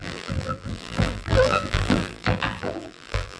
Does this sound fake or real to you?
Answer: fake